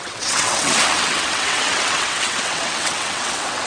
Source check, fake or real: fake